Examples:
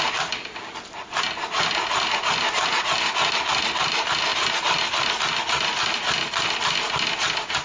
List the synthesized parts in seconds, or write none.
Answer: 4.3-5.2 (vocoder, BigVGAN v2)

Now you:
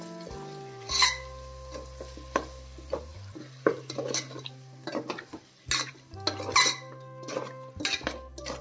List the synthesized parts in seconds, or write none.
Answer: none

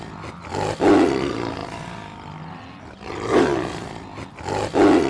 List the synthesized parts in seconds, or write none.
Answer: none

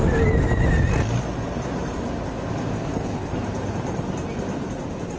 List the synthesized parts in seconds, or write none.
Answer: 2.8-3.3 (codec, HILCodec)

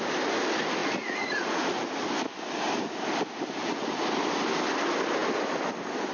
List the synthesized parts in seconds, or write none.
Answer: 0.8-1.9 (vocoder, Vocos)

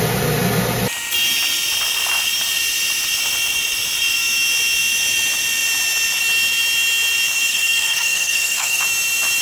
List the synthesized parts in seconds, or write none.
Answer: 7.5-8.8 (codec, SNAC)